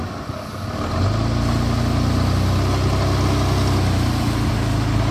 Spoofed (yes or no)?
no